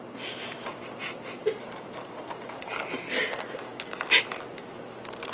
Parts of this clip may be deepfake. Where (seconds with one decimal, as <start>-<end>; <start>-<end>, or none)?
1.4-2.8